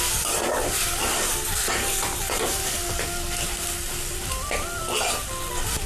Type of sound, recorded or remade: recorded